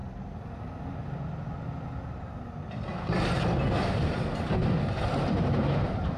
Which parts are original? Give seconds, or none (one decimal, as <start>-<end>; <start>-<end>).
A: 0.0-6.2